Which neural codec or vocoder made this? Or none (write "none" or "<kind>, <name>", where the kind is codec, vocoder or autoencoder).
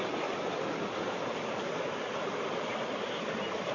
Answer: none